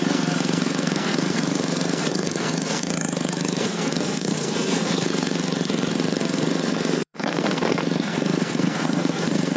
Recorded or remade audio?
remade